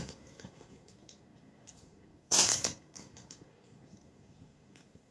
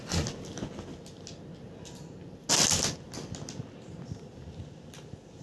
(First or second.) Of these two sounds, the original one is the second